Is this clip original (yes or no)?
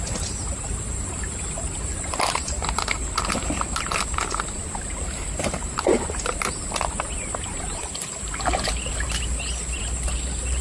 no